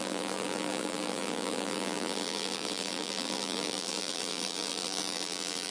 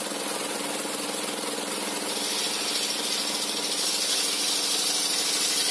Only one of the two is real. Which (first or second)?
second